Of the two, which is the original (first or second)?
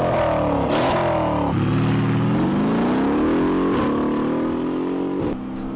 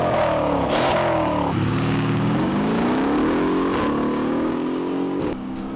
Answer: first